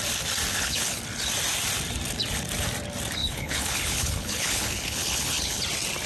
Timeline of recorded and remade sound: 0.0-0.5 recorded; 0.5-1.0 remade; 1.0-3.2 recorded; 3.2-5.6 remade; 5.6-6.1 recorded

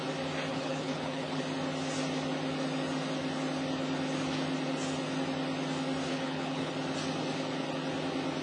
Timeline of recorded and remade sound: 0.0-0.5 recorded; 0.5-1.4 remade; 1.4-6.1 recorded; 6.1-6.7 remade; 6.7-8.4 recorded

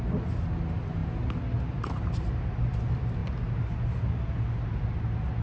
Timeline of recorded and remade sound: 0.0-5.4 recorded

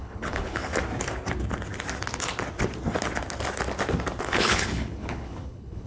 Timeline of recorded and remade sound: 0.0-0.7 remade; 0.7-4.2 recorded; 4.2-5.9 remade

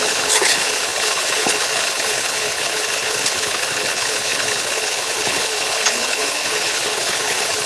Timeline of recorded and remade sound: 0.0-7.7 remade

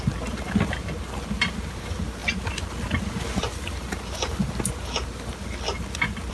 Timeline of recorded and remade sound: 0.0-6.3 recorded

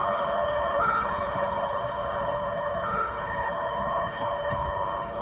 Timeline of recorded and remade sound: 0.0-5.2 remade